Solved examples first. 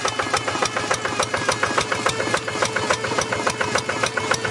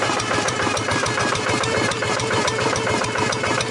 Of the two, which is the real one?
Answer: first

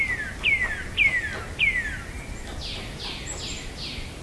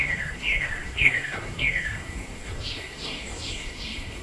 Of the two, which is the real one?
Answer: first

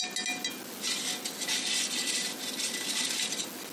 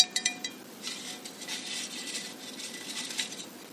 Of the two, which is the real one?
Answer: first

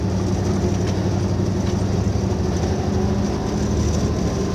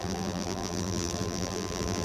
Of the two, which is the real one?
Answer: first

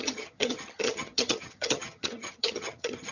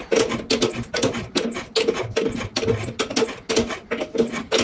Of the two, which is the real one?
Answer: second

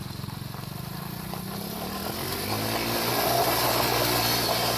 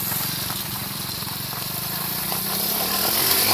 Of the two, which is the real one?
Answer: first